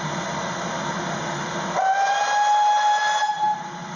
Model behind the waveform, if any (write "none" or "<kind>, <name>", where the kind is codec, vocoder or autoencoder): none